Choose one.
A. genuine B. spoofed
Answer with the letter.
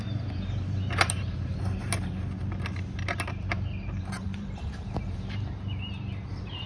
B